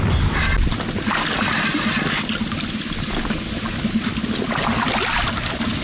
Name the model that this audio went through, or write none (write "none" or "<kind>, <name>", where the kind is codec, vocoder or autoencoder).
none